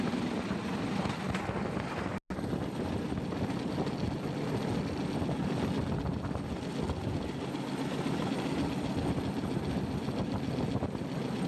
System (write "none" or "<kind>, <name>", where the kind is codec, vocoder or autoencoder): none